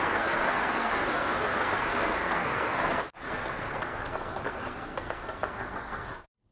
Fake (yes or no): yes